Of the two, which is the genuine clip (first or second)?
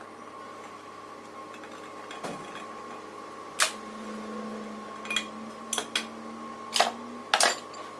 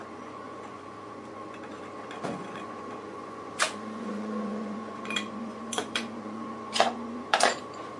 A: first